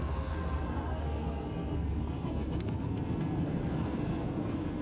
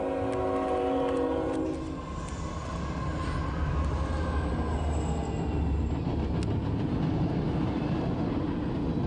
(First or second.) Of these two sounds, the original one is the second